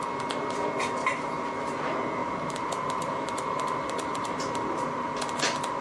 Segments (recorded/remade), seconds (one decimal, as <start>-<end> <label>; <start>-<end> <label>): 0.0-1.0 recorded; 1.0-1.5 remade; 1.5-2.2 recorded; 2.2-2.7 remade; 2.7-4.1 recorded; 4.1-5.2 remade; 5.2-5.8 recorded